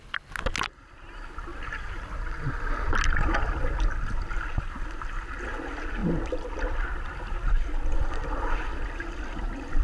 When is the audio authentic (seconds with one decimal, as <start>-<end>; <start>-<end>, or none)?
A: 0.0-9.8